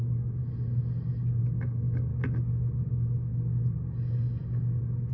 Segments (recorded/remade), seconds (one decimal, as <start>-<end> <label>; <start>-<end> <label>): 0.0-0.4 remade; 0.4-1.4 recorded; 1.4-2.1 remade; 2.1-2.9 recorded; 2.9-3.3 remade; 3.3-5.1 recorded